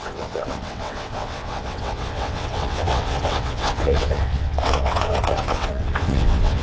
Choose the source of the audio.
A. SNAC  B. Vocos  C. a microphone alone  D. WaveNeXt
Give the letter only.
D